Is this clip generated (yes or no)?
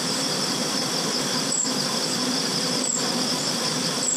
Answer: yes